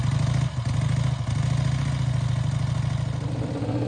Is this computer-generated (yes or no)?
no